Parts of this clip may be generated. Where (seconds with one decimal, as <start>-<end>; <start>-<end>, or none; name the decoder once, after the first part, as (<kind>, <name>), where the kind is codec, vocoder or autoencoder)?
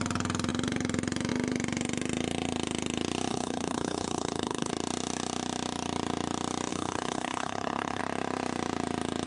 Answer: 3.3-4.7 (codec, HILCodec); 6.7-8.0